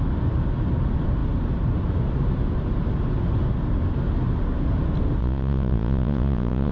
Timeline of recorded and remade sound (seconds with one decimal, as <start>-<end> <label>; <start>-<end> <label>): 0.0-5.2 recorded; 5.2-6.7 remade